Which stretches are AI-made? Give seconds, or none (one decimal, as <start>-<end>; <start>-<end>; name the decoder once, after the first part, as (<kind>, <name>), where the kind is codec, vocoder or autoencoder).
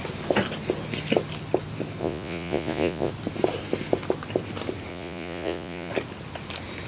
2.0-3.1 (vocoder, Vocos); 4.9-5.9